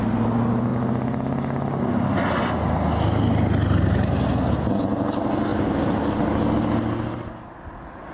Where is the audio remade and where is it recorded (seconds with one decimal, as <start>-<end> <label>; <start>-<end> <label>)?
0.0-8.1 recorded